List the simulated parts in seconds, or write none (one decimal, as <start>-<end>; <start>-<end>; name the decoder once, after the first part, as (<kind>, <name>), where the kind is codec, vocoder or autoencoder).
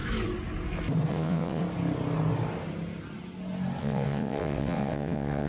1.1-1.6 (vocoder, WaveNeXt); 3.8-5.5